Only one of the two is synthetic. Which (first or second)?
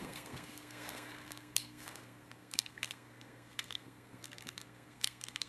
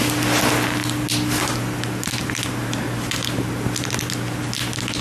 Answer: first